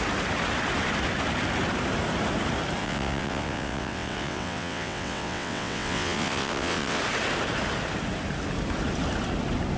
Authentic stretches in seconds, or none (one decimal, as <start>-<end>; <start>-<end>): 0.0-2.8; 7.0-9.8